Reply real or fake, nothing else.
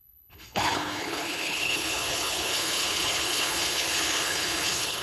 fake